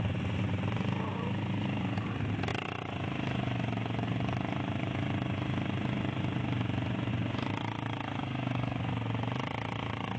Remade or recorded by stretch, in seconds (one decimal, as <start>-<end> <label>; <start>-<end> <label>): 0.0-8.2 recorded; 8.2-8.9 remade; 8.9-10.2 recorded